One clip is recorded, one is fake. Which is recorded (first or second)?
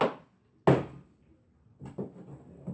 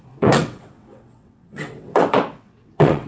first